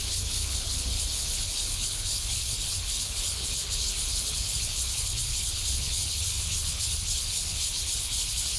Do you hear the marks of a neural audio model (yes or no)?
yes